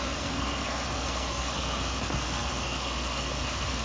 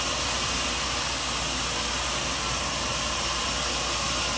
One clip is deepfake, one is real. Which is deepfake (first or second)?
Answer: first